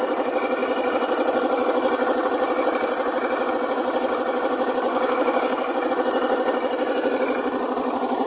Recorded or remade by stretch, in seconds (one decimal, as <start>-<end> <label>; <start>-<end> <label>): 0.0-4.9 recorded; 4.9-5.9 remade; 5.9-8.3 recorded